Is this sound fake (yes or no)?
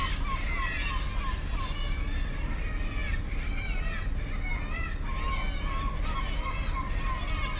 no